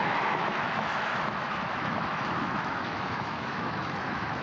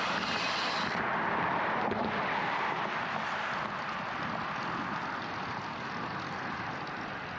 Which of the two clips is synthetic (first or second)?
first